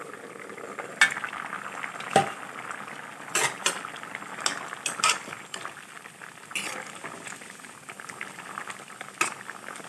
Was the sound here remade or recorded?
recorded